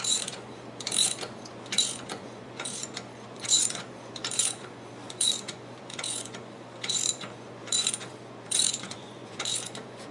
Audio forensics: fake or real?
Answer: fake